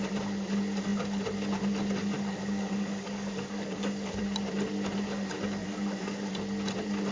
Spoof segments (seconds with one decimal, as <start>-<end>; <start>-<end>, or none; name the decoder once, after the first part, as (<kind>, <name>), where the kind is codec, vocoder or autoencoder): 2.0-4.2 (codec, DAC); 5.6-6.3